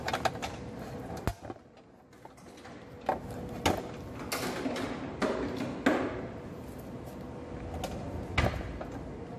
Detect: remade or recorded recorded